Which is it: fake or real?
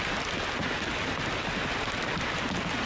real